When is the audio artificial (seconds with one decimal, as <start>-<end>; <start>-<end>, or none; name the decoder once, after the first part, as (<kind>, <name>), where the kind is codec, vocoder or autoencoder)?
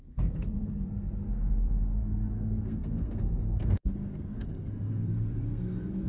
0.0-6.1 (codec, SNAC)